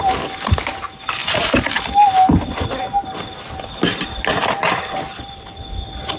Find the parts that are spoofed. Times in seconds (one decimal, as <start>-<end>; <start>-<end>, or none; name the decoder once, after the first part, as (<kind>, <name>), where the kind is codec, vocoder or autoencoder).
none